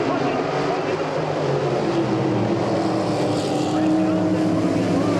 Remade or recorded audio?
recorded